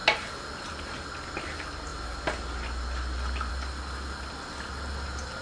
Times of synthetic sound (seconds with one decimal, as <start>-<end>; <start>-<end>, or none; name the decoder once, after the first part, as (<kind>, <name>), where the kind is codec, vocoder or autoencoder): none